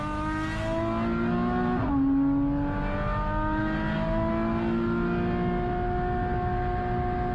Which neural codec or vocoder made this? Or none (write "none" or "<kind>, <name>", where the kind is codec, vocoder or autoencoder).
none